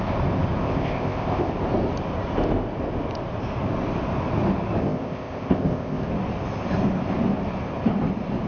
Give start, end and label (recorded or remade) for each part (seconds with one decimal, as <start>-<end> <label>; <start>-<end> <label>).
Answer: 0.0-0.6 recorded; 0.6-1.5 remade; 1.5-4.8 recorded; 4.8-6.1 remade; 6.1-8.5 recorded